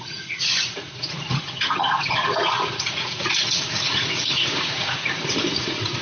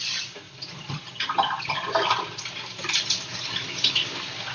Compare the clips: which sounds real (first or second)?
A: second